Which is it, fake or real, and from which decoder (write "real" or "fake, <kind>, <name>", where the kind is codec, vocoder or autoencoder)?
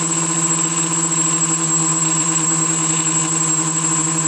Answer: fake, vocoder, BigVGAN v2